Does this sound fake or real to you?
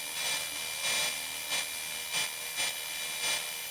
real